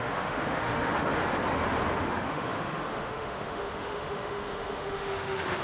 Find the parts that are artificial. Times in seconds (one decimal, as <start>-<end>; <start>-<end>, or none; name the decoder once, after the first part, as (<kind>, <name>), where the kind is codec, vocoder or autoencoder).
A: 0.0-1.2 (autoencoder, DAC-VAE); 1.9-5.6